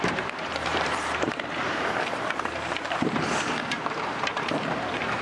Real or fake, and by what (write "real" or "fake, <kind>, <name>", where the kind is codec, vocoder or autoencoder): fake, vocoder, BigVGAN v2